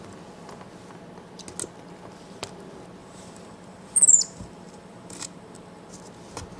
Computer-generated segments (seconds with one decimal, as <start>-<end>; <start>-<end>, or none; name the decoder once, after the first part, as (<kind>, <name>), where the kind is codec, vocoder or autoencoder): 3.0-5.9 (vocoder, BigVGAN v2)